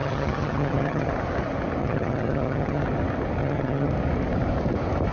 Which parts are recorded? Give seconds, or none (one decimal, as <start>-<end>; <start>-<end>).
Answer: 1.1-1.8; 2.8-3.4; 3.9-5.1